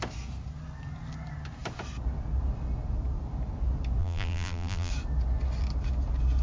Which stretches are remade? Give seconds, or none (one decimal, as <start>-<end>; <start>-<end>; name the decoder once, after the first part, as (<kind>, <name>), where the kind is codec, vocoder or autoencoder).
4.0-4.9 (vocoder, BigVGAN v2)